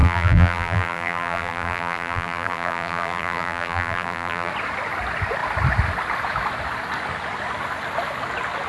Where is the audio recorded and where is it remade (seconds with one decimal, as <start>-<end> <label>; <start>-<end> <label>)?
0.0-4.5 remade; 4.5-8.7 recorded